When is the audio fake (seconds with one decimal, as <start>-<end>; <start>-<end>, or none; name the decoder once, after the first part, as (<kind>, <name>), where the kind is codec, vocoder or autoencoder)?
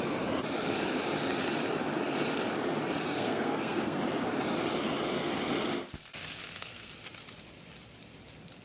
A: 3.0-4.0 (codec, SNAC); 6.4-6.9